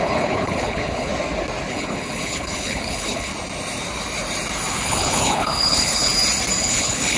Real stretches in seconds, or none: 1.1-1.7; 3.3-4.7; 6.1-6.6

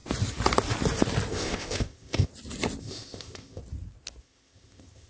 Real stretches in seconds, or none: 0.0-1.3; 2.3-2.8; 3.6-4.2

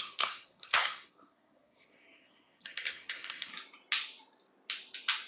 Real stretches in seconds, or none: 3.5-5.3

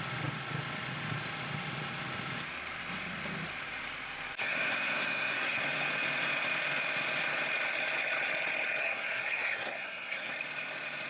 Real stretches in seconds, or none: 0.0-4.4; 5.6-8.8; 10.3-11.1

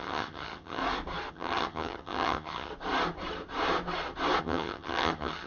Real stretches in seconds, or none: 0.8-1.3; 2.7-4.4

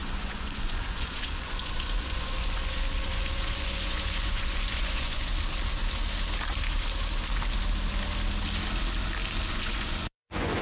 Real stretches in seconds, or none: 5.3-9.5